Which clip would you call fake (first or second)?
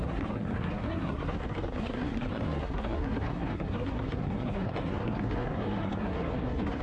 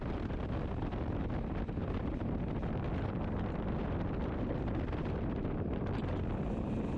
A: first